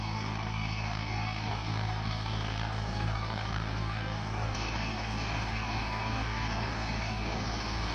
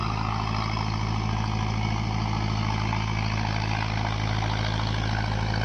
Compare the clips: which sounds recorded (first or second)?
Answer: second